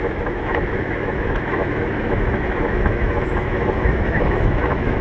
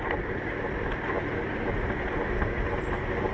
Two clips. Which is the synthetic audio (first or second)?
first